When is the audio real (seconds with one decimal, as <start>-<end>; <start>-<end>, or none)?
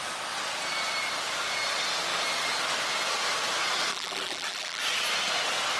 0.0-3.9; 4.8-5.8